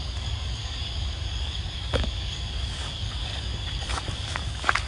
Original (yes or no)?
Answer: no